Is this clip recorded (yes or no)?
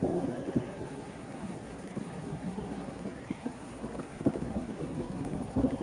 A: no